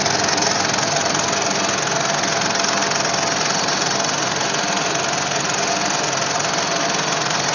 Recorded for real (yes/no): yes